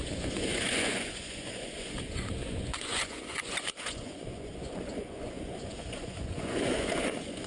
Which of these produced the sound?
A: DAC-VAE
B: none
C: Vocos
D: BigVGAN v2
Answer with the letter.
C